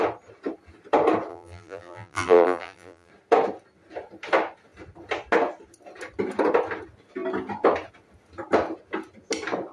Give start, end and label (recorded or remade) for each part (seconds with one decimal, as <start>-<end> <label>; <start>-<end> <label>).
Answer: 0.0-1.3 recorded; 1.3-3.1 remade; 3.1-9.7 recorded

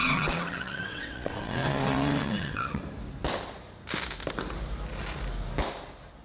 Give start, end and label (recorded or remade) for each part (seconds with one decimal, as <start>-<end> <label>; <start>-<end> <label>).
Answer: 0.0-2.8 remade; 2.8-6.2 recorded

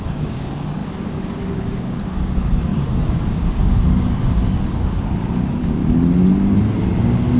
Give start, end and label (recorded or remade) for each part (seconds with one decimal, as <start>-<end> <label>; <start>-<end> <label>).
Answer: 0.0-5.8 remade; 5.8-7.4 recorded

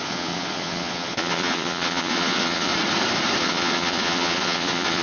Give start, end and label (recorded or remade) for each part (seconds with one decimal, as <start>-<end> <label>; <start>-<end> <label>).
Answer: 0.0-2.7 remade; 2.7-3.4 recorded; 3.4-5.0 remade